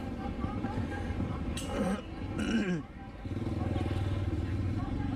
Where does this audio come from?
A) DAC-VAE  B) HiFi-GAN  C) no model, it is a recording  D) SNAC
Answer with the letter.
C